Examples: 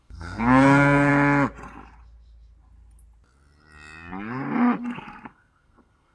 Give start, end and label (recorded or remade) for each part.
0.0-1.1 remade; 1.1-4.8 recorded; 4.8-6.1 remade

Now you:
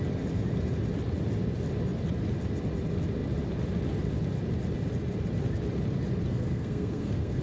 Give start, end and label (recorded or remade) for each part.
0.0-6.3 recorded; 6.3-7.4 remade

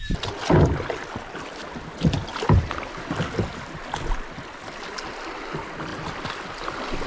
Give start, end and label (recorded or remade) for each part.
0.0-7.1 recorded

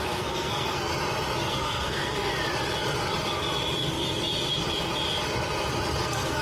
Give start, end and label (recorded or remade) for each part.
0.0-0.9 remade; 0.9-1.4 recorded; 1.4-2.3 remade; 2.3-6.0 recorded; 6.0-6.4 remade

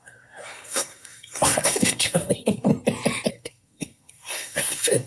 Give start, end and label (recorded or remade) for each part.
0.0-2.7 remade; 2.7-3.3 recorded; 3.3-5.1 remade